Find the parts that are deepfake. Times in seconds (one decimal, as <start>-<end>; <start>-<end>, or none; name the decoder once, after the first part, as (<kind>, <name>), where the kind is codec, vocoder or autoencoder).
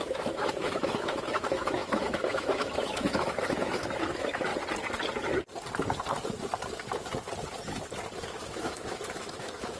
0.0-4.5 (autoencoder, DAC-VAE); 8.2-9.8